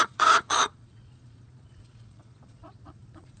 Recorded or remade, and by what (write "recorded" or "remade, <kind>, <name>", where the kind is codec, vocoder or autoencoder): remade, vocoder, Vocos